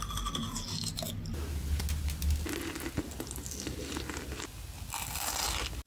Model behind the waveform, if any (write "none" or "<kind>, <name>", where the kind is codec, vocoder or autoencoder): none